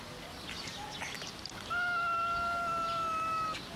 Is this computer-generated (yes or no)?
no